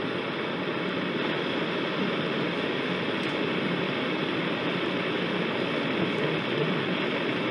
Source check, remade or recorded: remade